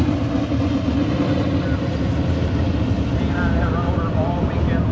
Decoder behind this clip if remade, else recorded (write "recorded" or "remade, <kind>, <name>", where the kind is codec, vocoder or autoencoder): recorded